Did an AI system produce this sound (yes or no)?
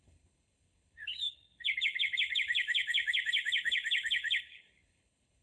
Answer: yes